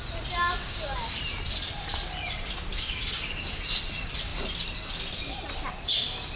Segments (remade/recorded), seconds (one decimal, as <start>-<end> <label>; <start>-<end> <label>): 0.0-0.6 recorded; 0.6-1.2 remade; 1.2-2.7 recorded; 2.7-3.6 remade; 3.6-6.4 recorded